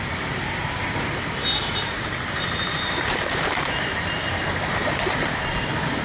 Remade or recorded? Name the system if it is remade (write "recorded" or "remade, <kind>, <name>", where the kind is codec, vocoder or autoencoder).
remade, vocoder, BigVGAN v2